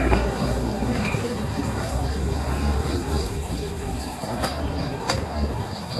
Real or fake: fake